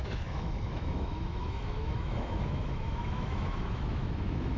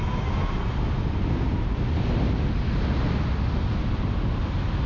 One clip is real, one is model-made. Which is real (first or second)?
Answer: second